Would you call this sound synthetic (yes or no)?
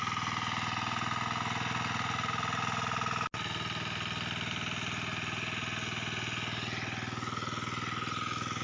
no